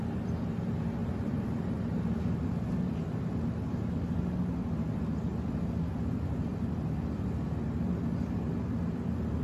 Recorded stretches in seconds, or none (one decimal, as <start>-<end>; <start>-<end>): 0.0-1.0; 2.0-6.5; 7.2-9.4